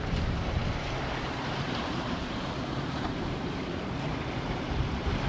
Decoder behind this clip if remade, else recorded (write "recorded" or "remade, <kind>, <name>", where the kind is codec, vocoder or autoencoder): remade, vocoder, BigVGAN v2